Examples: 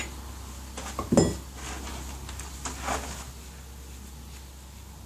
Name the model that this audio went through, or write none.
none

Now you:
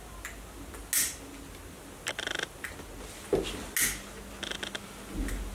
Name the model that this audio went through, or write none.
none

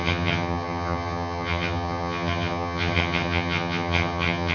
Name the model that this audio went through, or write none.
vocoder, HiFi-GAN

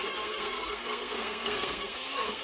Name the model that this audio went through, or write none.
codec, SNAC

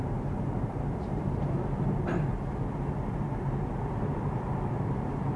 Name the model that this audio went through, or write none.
vocoder, BigVGAN v2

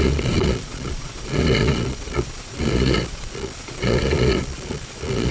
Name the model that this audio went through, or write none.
vocoder, Vocos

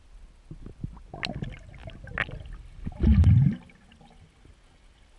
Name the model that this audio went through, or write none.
none